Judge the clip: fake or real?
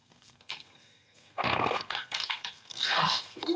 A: fake